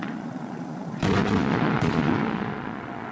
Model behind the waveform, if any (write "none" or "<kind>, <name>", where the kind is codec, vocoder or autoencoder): vocoder, Vocos